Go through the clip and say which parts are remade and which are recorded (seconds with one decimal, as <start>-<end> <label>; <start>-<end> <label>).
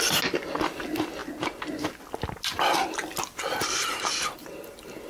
0.0-5.1 recorded